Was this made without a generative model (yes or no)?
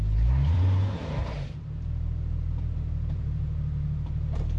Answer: no